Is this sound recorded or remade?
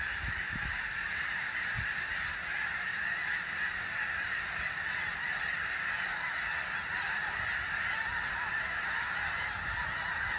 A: recorded